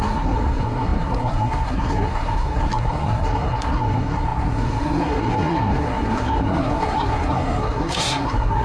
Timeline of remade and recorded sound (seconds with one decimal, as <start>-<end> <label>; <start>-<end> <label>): 0.0-8.6 remade

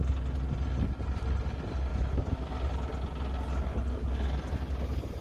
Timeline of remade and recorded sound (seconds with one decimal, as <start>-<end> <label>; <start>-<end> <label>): 0.0-1.9 recorded; 1.9-2.5 remade; 2.5-5.2 recorded